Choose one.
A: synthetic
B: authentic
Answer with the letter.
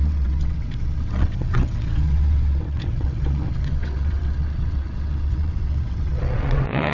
A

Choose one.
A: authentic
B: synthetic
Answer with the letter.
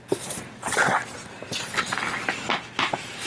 A